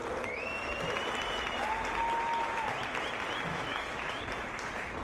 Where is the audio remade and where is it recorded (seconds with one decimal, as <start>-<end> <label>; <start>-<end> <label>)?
0.0-3.5 recorded; 3.5-4.2 remade; 4.2-5.0 recorded